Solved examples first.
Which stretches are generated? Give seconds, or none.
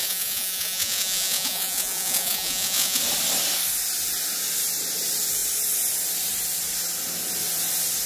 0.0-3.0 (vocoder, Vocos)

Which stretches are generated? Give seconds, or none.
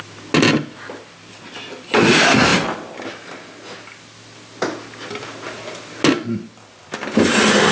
none